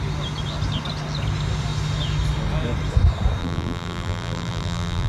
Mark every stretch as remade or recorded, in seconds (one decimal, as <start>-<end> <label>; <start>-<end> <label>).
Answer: 0.0-3.4 recorded; 3.4-5.1 remade